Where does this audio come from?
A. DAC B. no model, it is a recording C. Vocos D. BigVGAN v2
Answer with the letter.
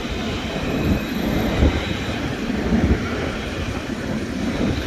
D